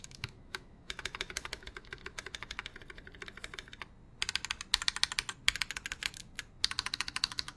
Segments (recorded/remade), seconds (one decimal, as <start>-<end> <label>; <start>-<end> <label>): 0.0-2.7 remade; 2.7-6.9 recorded; 6.9-7.6 remade

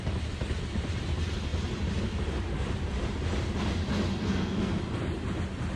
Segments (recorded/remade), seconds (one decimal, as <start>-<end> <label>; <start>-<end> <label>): 0.0-4.2 recorded; 4.2-4.8 remade; 4.8-5.8 recorded

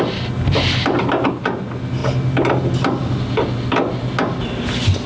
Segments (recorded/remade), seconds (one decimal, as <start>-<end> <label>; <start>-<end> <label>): 0.0-5.1 recorded